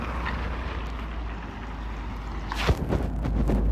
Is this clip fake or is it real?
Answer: real